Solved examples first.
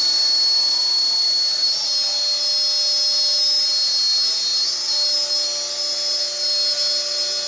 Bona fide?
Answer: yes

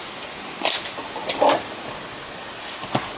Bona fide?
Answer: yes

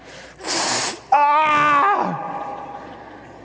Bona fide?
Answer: yes